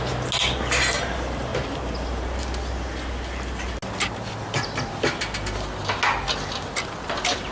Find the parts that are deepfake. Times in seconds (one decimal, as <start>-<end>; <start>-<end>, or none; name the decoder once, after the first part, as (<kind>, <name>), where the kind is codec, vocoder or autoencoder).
1.5-2.4 (vocoder, BigVGAN v2)